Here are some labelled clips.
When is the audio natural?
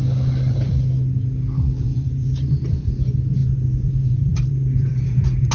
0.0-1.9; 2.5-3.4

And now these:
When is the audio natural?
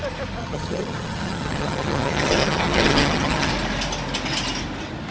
0.0-0.4; 3.5-5.1